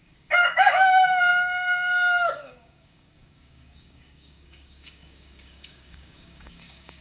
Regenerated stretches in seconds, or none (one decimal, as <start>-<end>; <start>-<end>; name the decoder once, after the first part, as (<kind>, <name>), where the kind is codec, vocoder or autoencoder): 0.0-7.0 (codec, DAC)